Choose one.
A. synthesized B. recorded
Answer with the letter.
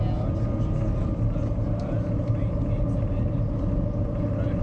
B